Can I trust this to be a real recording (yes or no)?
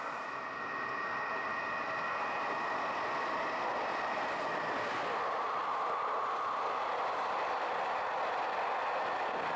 yes